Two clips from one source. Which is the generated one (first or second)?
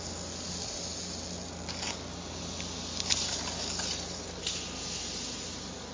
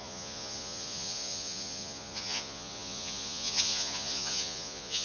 second